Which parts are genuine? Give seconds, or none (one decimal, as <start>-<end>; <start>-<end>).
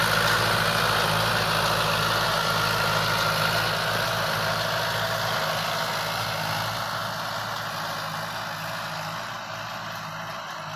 0.0-10.8